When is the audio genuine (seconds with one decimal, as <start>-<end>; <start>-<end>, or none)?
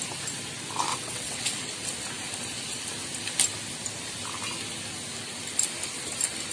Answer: 0.0-0.9; 1.7-6.5